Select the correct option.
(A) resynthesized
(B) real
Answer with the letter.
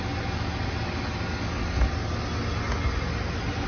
B